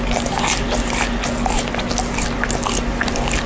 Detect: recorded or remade recorded